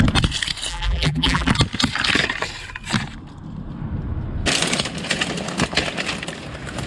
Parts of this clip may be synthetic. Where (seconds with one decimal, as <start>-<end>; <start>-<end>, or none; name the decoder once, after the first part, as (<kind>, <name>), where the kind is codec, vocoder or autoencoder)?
0.7-1.5 (vocoder, BigVGAN v2)